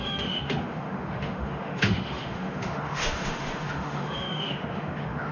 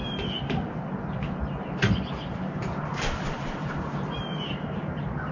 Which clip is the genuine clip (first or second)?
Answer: second